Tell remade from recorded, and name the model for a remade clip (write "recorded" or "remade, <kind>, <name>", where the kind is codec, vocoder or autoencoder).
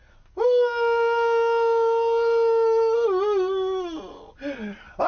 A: recorded